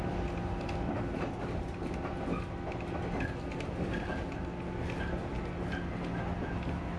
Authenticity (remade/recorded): recorded